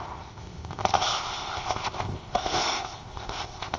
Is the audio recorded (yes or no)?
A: no